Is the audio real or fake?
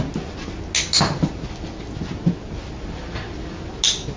real